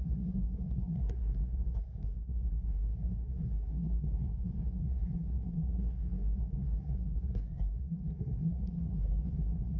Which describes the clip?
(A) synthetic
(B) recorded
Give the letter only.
A